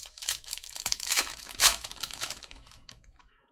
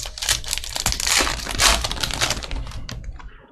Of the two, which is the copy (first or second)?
first